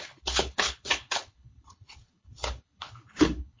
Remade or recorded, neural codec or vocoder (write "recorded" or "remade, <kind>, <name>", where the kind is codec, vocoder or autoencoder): remade, codec, HILCodec